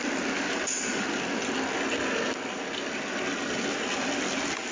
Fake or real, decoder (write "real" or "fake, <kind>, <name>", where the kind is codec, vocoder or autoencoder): real